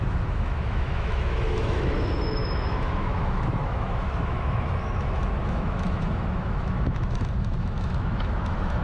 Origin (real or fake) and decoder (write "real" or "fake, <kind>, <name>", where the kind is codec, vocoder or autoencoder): fake, autoencoder, DAC-VAE